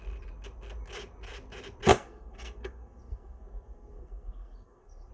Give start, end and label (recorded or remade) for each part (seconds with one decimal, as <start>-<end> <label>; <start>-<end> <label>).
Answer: 0.0-1.9 recorded; 1.9-5.1 remade